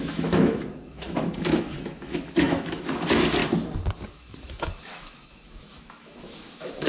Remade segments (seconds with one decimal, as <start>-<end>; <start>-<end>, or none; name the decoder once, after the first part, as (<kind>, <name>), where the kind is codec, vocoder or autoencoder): 0.0-3.4 (autoencoder, DAC-VAE); 4.1-6.9

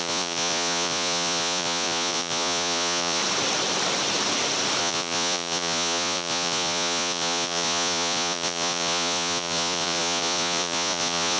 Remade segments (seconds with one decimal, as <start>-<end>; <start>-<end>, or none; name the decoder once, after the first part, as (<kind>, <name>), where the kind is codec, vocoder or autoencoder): 0.0-3.2 (vocoder, Vocos); 4.8-11.4

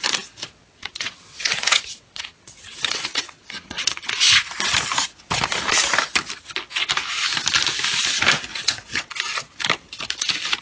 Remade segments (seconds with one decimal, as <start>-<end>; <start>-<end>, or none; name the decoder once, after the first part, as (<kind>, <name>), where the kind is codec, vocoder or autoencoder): 0.5-4.3 (vocoder, WaveNeXt); 8.5-9.0

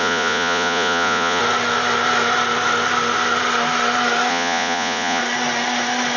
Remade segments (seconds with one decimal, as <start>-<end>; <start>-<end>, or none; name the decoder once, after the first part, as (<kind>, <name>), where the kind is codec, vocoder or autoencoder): 0.0-1.4 (vocoder, Vocos); 4.3-5.2

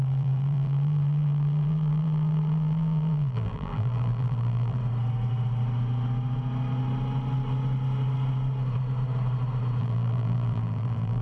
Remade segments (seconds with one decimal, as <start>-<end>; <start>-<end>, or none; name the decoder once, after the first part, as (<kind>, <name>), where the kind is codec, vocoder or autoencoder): 0.0-4.8 (vocoder, BigVGAN v2); 9.8-11.2

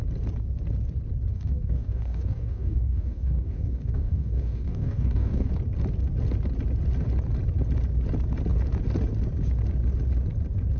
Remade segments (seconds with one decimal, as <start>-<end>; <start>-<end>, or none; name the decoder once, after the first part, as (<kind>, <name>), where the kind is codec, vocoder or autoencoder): 1.3-5.5 (codec, DAC)

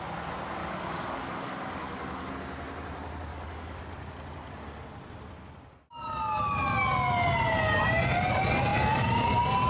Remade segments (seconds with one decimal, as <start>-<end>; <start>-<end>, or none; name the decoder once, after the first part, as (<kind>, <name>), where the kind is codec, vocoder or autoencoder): 0.6-2.3 (codec, DAC); 3.3-3.8